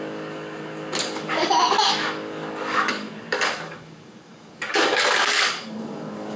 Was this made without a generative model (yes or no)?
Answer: no